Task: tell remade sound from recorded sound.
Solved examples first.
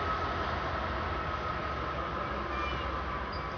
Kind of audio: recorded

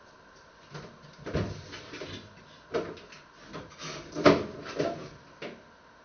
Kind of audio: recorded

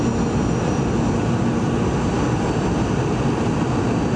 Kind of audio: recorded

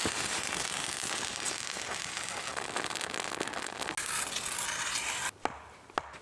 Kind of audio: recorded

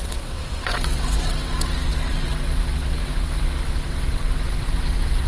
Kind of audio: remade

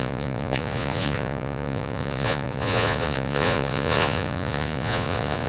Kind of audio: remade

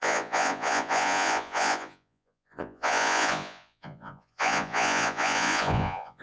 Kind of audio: remade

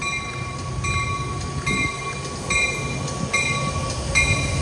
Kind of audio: recorded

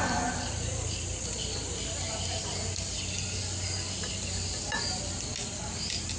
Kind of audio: recorded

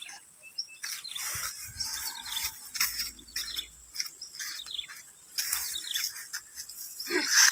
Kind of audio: recorded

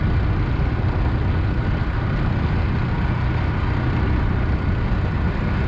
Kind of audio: recorded